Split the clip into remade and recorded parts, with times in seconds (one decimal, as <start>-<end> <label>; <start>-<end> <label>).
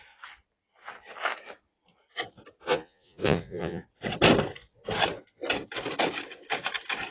0.0-2.6 recorded; 2.6-3.8 remade; 3.8-7.1 recorded